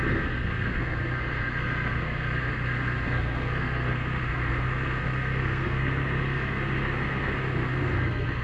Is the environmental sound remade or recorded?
remade